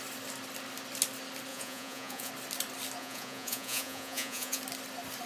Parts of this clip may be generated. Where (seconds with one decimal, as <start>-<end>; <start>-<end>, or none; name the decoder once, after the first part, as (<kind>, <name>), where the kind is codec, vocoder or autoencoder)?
1.5-2.3 (vocoder, Vocos); 3.0-4.6